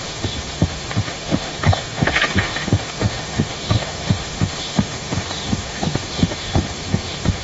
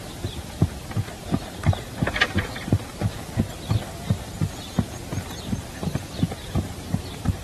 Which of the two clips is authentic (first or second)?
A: second